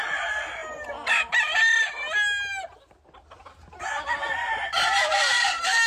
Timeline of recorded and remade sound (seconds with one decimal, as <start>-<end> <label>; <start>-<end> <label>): 0.0-5.9 recorded